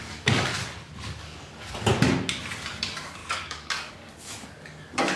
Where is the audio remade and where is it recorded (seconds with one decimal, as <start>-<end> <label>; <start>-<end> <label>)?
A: 0.0-0.5 remade; 0.5-1.2 recorded; 1.2-1.9 remade; 1.9-2.7 recorded; 2.7-5.2 remade